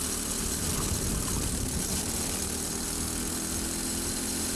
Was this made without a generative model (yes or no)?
yes